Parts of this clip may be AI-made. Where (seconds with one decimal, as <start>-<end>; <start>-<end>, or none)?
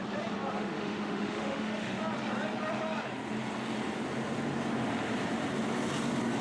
0.5-2.0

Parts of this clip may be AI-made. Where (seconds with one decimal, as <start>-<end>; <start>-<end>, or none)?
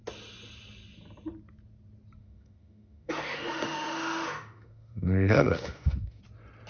2.2-6.2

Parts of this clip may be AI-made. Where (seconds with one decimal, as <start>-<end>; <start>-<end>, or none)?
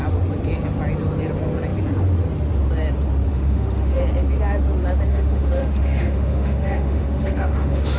3.3-4.0; 5.1-8.0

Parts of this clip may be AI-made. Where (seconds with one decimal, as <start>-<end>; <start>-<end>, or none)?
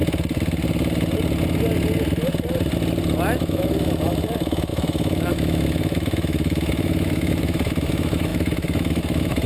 3.4-9.5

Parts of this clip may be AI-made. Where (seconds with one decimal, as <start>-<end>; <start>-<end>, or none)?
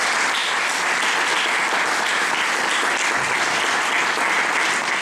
none